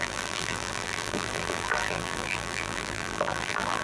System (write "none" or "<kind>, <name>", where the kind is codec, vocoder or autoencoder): vocoder, BigVGAN v2